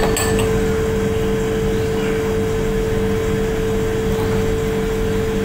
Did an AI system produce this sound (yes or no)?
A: no